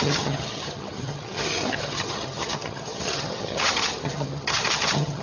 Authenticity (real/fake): fake